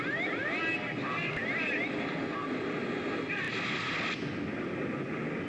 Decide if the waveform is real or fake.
real